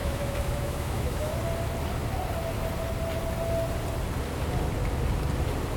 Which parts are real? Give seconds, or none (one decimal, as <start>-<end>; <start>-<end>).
1.4-5.8